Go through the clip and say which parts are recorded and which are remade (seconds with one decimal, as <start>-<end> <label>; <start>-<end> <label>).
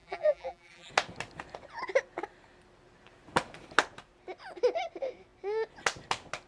0.0-0.9 remade; 0.9-6.5 recorded